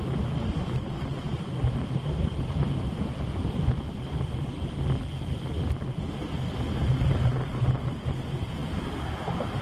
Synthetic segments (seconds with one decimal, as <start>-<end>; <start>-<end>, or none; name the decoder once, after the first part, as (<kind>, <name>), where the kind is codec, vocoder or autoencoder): none